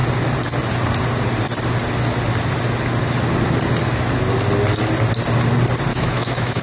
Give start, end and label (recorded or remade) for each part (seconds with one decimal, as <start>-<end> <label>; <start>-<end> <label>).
0.0-5.9 recorded; 5.9-6.6 remade